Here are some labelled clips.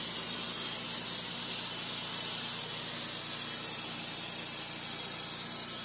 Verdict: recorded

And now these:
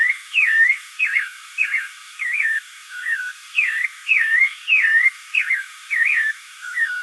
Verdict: remade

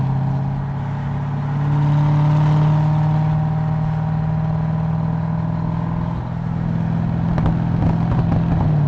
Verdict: recorded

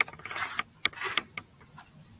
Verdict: recorded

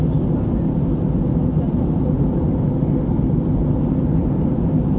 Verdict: recorded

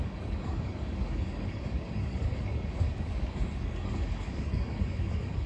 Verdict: remade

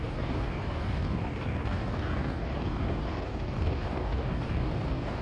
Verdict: remade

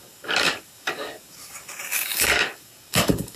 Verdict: remade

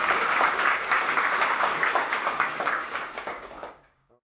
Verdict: remade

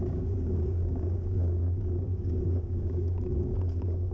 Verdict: remade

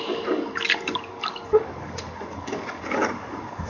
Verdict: remade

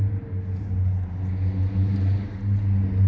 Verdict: recorded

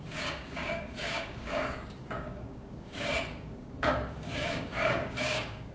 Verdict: remade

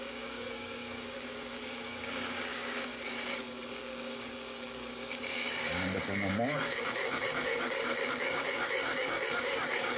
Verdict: remade